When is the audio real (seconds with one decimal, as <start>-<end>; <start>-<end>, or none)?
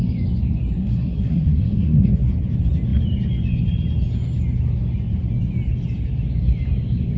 0.0-0.8; 2.3-7.2